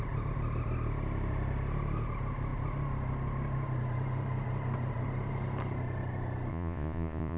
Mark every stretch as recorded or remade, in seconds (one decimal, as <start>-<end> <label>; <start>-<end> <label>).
0.0-6.5 recorded; 6.5-7.4 remade